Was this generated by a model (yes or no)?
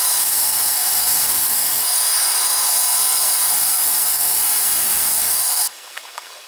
yes